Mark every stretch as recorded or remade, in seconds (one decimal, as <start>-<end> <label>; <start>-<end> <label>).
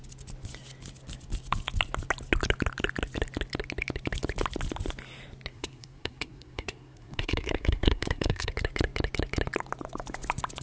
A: 0.0-5.5 recorded; 5.5-8.5 remade; 8.5-10.6 recorded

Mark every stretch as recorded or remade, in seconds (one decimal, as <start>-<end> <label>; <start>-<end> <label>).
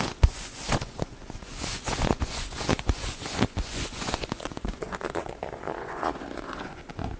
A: 0.0-7.2 remade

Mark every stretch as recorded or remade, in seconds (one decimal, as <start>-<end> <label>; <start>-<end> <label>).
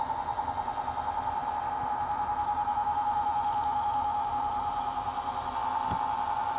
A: 0.0-6.6 recorded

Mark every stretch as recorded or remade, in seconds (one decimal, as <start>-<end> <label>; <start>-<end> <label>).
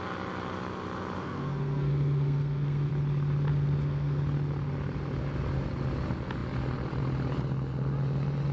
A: 0.0-1.2 recorded; 1.2-2.9 remade; 2.9-3.5 recorded; 3.5-4.2 remade; 4.2-8.5 recorded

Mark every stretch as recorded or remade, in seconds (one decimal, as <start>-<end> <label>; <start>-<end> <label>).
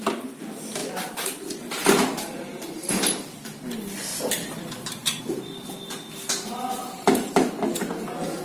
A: 0.0-0.8 recorded; 0.8-3.2 remade; 3.2-4.1 recorded; 4.1-5.2 remade; 5.2-6.8 recorded; 6.8-7.5 remade; 7.5-8.4 recorded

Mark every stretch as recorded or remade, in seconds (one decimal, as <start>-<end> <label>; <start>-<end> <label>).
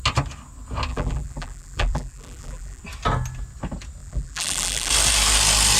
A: 0.0-0.9 recorded; 0.9-2.8 remade; 2.8-4.0 recorded; 4.0-4.9 remade; 4.9-5.8 recorded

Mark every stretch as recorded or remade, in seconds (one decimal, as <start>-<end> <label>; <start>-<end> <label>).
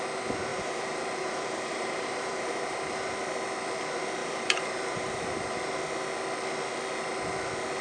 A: 0.0-0.5 recorded; 0.5-3.1 remade; 3.1-4.2 recorded; 4.2-5.7 remade; 5.7-7.8 recorded